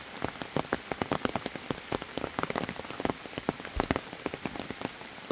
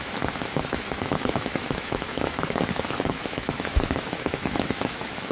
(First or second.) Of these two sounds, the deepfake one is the second